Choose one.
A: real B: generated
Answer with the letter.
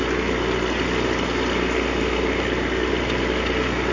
A